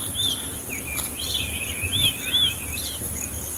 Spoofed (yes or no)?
no